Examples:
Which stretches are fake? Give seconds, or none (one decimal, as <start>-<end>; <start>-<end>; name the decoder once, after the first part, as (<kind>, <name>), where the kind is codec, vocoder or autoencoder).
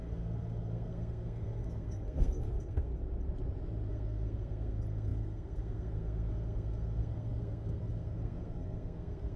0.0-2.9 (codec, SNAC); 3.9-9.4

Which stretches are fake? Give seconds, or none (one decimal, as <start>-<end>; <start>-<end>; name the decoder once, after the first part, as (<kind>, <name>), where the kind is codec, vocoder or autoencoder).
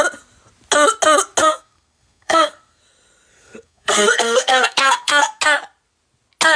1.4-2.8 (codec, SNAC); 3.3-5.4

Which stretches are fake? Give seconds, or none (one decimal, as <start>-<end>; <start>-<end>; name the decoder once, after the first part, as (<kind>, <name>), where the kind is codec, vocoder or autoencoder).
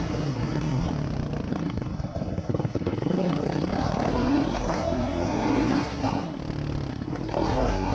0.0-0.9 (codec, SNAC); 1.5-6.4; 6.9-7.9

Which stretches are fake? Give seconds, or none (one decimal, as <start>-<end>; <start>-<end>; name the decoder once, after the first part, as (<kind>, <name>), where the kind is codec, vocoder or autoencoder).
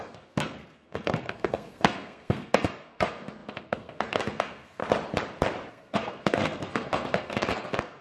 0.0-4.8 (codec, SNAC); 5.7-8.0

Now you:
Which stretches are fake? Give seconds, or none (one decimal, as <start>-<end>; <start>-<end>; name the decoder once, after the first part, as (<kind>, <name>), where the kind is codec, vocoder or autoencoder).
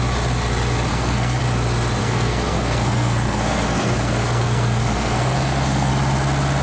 0.9-1.4 (codec, SNAC); 2.0-5.9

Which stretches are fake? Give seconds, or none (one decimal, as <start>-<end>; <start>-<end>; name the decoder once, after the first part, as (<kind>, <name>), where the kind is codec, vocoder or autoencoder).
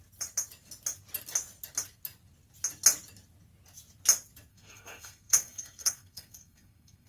4.5-7.1 (codec, SNAC)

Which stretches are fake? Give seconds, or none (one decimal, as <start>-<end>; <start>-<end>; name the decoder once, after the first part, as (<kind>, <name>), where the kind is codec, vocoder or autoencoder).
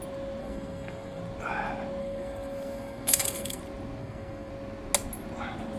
0.4-1.2 (codec, SNAC); 2.0-3.6; 4.0-4.5